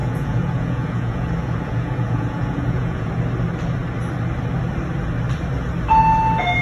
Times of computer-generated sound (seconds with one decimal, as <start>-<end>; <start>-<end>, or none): 0.0-3.1